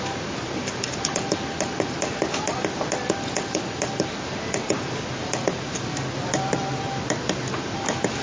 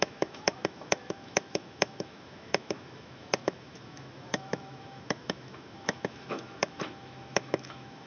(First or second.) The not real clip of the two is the second